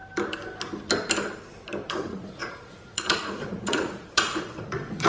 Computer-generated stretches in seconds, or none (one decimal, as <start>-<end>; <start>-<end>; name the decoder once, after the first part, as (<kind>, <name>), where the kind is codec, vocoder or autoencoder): 1.9-5.1 (vocoder, Vocos)